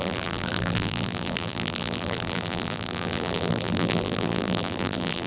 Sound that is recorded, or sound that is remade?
remade